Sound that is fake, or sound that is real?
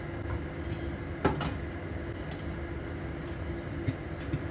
real